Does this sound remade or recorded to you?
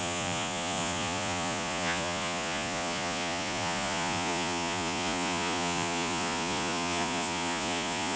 remade